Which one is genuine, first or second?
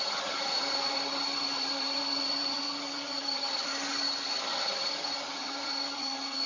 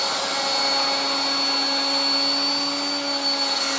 second